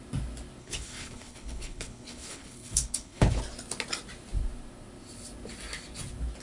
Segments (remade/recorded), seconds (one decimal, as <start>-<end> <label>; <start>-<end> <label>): 0.0-0.6 recorded; 0.6-3.4 remade; 3.4-6.4 recorded